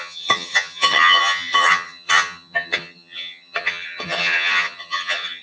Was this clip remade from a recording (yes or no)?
yes